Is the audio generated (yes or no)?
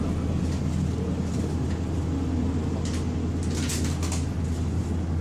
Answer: no